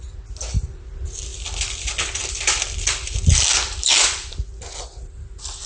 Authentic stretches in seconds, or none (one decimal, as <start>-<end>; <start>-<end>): 0.0-1.3; 4.5-5.7